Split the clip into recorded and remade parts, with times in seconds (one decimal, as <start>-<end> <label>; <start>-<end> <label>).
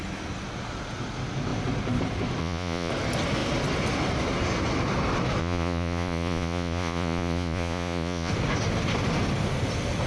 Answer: 0.0-2.4 recorded; 2.4-2.9 remade; 2.9-5.4 recorded; 5.4-8.3 remade; 8.3-10.1 recorded